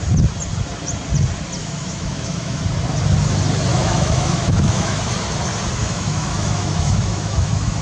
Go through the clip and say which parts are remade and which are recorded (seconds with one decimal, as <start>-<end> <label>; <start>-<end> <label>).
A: 0.0-1.6 recorded; 1.6-2.6 remade; 2.6-3.7 recorded; 3.7-5.0 remade; 5.0-5.8 recorded; 5.8-7.8 remade